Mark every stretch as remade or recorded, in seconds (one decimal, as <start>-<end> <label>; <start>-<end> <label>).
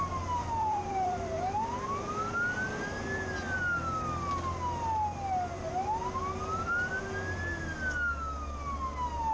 0.0-0.4 recorded; 0.4-1.3 remade; 1.3-6.5 recorded; 6.5-7.0 remade; 7.0-9.3 recorded